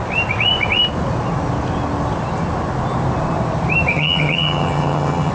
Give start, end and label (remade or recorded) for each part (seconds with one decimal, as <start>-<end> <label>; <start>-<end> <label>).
0.0-3.9 recorded; 3.9-5.3 remade